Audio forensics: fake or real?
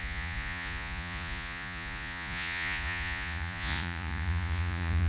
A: fake